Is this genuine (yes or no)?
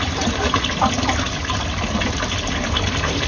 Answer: yes